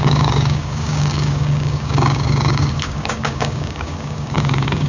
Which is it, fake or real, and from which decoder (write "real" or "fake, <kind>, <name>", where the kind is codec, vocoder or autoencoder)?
fake, codec, DAC